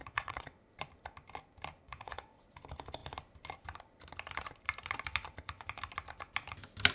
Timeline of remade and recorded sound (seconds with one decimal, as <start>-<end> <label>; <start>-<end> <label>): 0.0-0.6 remade; 0.6-1.8 recorded; 1.8-2.4 remade; 2.4-6.9 recorded